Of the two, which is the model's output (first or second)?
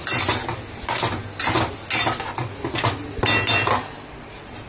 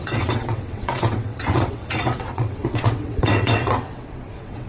second